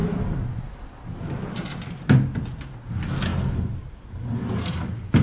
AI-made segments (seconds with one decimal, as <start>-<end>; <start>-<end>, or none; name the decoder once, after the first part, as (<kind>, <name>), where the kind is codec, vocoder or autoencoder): 0.0-1.2 (vocoder, BigVGAN v2)